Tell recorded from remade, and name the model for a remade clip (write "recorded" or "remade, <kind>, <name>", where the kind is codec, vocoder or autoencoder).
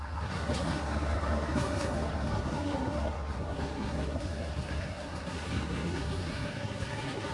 remade, codec, SNAC